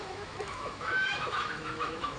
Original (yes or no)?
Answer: no